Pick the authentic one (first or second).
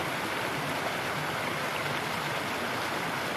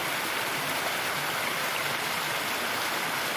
first